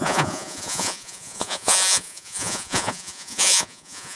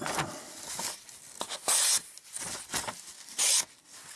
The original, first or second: second